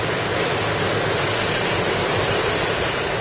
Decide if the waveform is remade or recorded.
recorded